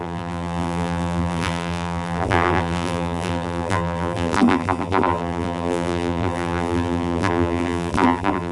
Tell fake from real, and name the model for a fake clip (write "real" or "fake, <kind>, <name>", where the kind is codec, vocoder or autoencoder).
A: fake, vocoder, BigVGAN v2